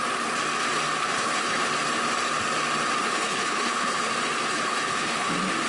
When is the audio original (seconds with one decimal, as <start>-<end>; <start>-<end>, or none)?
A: 0.0-1.0; 1.7-3.0; 4.1-4.5; 5.3-5.7